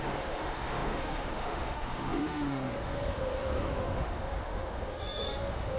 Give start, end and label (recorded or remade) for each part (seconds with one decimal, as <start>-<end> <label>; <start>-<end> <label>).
0.0-5.8 remade